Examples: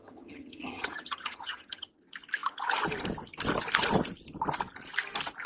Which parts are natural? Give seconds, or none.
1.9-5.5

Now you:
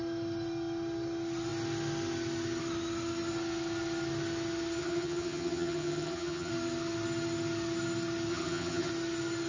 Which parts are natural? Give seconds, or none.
0.0-4.8; 6.5-8.3; 8.9-9.5

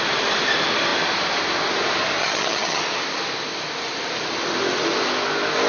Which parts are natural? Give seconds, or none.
0.0-2.2; 2.8-5.7

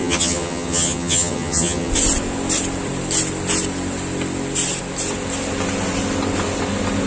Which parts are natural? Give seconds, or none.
1.9-7.1

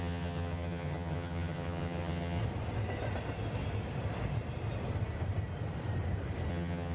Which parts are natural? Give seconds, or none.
2.4-6.5

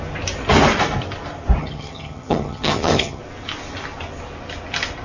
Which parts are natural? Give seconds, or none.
0.0-1.6; 3.2-5.0